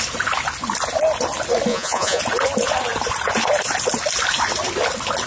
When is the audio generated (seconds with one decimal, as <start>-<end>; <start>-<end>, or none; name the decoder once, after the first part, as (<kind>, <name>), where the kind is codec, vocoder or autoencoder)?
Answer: 1.7-2.2 (vocoder, Vocos)